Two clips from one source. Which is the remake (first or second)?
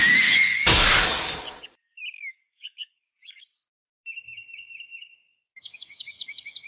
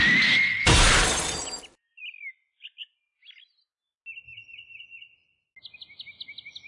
first